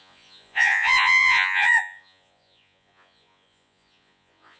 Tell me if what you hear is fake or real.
fake